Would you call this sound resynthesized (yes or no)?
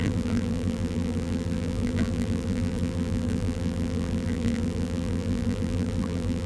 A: yes